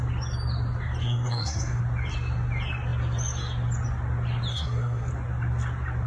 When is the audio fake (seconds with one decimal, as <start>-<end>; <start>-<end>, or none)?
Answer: 1.0-1.8; 4.5-5.1